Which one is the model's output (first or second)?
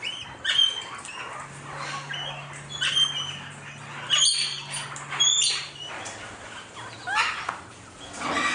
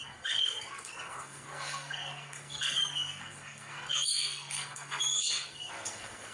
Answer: second